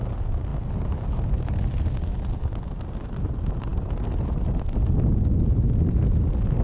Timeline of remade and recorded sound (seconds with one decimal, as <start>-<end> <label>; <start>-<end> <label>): 0.0-6.6 recorded